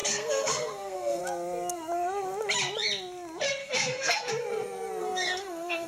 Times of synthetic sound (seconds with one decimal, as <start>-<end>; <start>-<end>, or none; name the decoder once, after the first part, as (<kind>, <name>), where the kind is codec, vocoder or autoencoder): 0.0-1.2 (codec, SNAC); 3.6-4.3; 5.0-5.9